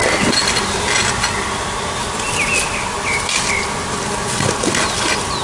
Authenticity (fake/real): real